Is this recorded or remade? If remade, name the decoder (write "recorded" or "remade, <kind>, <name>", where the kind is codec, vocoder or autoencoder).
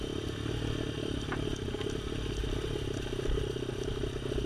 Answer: recorded